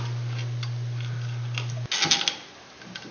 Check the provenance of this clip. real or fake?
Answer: real